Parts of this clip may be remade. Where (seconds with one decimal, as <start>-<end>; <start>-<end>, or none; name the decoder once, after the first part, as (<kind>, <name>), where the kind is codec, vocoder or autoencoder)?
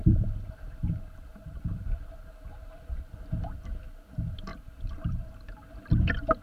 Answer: 0.0-2.8 (vocoder, BigVGAN v2); 4.5-5.7